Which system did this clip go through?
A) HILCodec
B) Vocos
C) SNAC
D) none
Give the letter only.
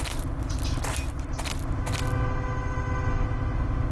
D